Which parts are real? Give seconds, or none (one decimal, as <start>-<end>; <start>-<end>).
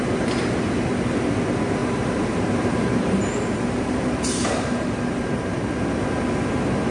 0.0-1.8; 5.6-6.9